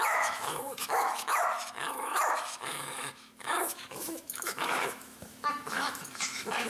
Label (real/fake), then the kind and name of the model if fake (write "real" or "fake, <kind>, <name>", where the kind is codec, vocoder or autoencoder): fake, autoencoder, DAC-VAE